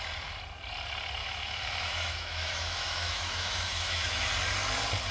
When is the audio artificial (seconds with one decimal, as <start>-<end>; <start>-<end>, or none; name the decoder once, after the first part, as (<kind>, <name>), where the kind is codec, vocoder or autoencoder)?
1.2-4.3 (autoencoder, DAC-VAE)